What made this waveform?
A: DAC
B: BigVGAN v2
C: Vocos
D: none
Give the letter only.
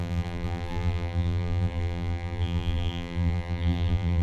B